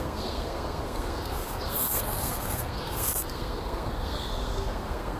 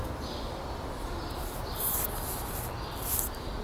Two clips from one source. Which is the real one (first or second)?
second